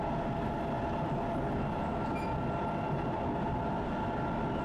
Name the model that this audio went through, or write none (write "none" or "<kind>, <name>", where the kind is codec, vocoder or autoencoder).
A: none